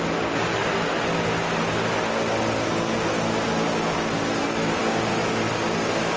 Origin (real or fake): real